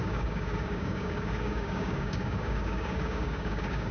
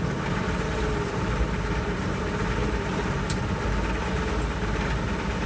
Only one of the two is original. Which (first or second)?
second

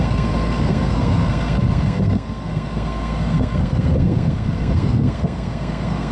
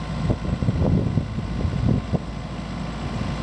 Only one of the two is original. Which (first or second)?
second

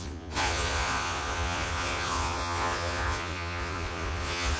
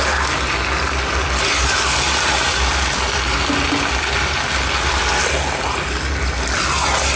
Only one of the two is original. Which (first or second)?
second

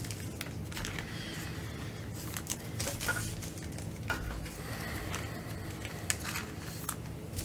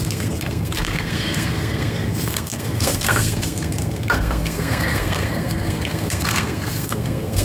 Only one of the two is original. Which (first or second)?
first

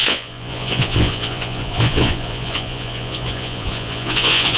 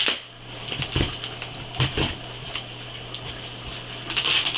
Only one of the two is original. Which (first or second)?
second